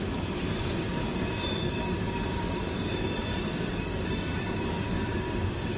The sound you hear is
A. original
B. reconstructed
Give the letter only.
B